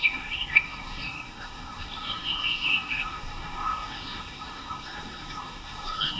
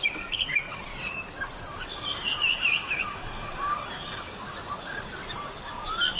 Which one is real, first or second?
second